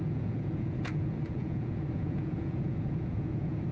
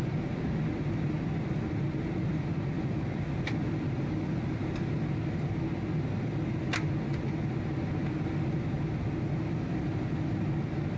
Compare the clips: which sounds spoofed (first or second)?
first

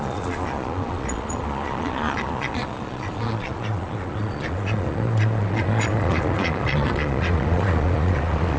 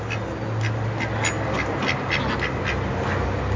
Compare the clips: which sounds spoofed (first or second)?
first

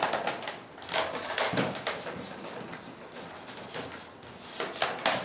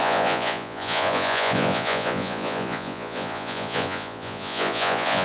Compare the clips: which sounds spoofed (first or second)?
second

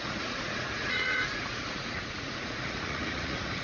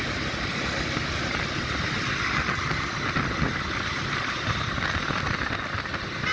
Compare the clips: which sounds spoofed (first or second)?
first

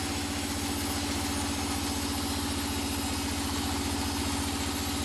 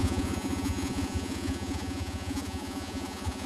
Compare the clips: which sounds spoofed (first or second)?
second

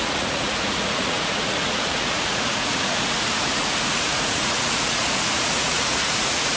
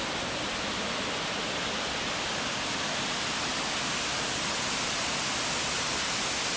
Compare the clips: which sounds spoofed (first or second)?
first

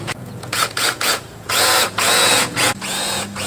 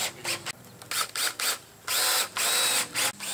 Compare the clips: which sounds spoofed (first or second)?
first